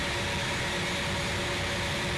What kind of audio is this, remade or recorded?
recorded